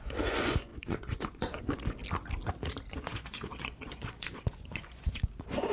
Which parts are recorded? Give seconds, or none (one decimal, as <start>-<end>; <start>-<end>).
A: 2.0-2.9